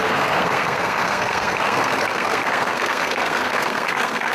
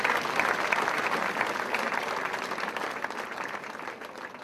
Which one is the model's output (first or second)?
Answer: first